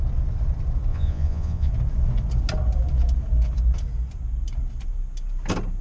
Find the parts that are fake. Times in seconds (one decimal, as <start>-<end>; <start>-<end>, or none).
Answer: 0.9-1.7